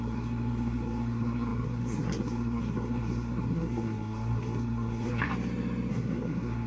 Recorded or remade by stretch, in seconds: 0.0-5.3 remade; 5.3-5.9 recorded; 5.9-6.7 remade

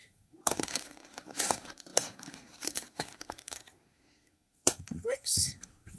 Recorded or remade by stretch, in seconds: 0.0-6.0 remade